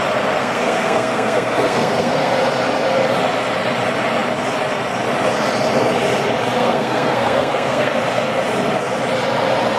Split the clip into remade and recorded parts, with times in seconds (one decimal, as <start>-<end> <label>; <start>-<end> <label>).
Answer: 0.0-0.4 recorded; 0.4-2.3 remade; 2.3-6.6 recorded; 6.6-7.9 remade; 7.9-9.8 recorded